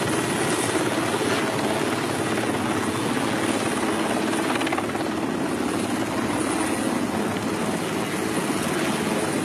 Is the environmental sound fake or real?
real